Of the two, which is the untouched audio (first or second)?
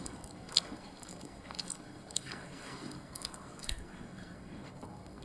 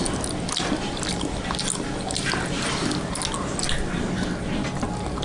second